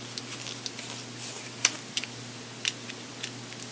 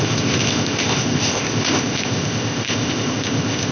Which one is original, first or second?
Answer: first